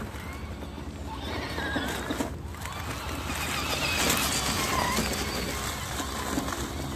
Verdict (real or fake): real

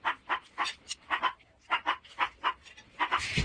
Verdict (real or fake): real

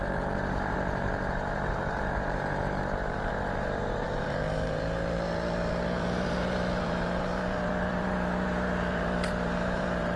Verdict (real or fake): fake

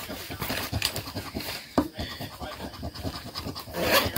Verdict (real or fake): real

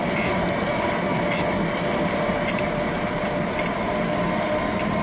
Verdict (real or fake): real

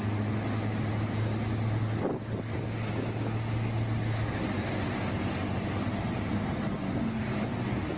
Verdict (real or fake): real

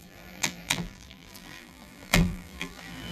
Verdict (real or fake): fake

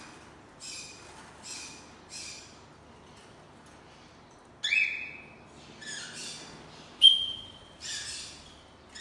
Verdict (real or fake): real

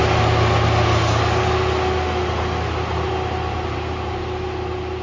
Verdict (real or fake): real